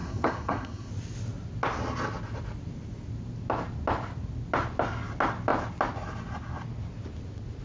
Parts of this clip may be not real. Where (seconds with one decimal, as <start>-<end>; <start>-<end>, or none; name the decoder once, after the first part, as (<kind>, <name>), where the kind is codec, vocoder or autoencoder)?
0.0-0.9 (codec, SNAC)